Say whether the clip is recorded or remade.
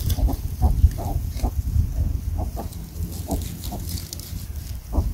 recorded